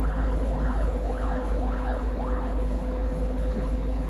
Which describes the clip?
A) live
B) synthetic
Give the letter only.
B